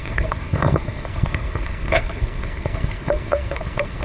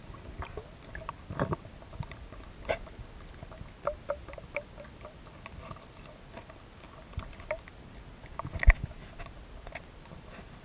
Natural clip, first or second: second